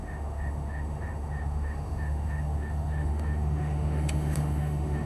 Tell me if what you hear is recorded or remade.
remade